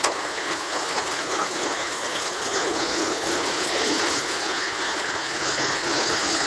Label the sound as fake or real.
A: fake